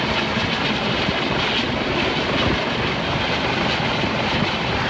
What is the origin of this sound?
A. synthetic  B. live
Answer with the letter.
B